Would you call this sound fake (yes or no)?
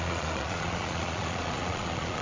yes